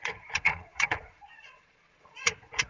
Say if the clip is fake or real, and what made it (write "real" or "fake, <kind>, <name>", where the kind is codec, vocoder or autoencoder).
fake, vocoder, Vocos